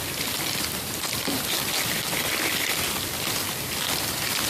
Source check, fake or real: fake